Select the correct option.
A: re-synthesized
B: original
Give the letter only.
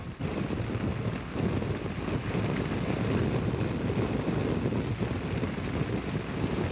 B